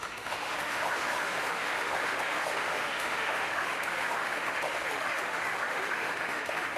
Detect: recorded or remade remade